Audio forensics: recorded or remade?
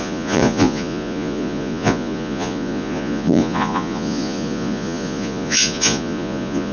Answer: remade